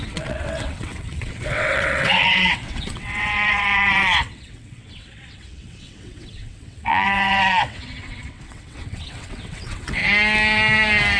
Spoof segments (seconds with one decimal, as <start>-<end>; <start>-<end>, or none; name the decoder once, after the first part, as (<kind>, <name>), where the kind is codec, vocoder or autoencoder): 0.0-10.0 (vocoder, WaveNeXt)